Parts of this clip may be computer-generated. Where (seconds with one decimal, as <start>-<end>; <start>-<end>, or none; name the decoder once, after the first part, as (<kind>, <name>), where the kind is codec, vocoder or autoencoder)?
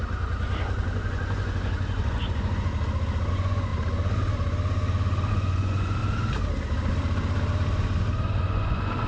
0.8-2.7 (vocoder, Vocos); 3.3-3.7; 5.3-6.0; 8.4-9.1